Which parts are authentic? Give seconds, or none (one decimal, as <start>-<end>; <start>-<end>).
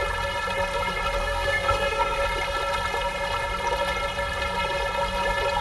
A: 0.0-1.2; 2.2-5.6